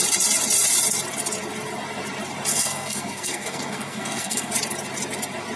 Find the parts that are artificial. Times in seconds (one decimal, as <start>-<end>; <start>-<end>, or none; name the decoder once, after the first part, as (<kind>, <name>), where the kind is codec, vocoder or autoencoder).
2.5-4.5 (codec, SNAC)